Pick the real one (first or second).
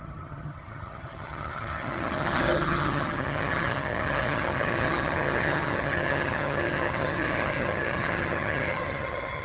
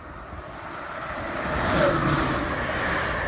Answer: second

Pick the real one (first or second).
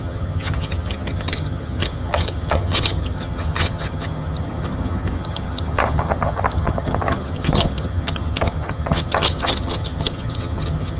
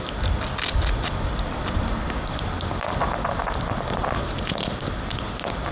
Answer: second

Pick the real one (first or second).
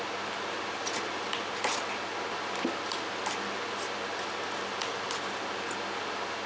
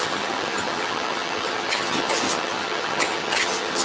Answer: first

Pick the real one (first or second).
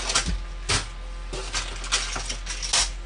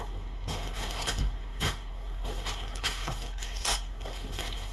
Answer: first